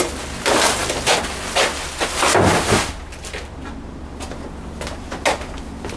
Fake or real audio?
real